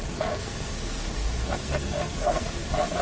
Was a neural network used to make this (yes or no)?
yes